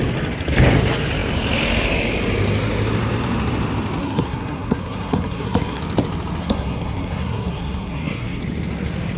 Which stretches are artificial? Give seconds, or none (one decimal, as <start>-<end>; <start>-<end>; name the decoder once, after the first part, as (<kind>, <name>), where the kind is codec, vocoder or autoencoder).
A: 4.0-5.8 (codec, SNAC); 6.4-8.4